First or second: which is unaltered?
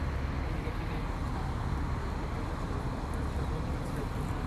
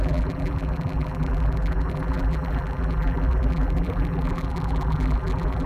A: first